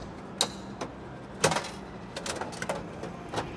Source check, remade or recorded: recorded